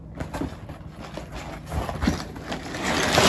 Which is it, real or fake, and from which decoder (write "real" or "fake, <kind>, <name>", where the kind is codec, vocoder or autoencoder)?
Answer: real